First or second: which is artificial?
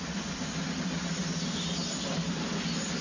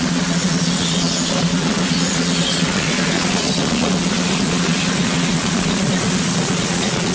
second